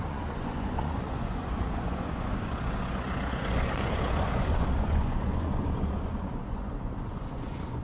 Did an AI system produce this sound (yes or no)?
yes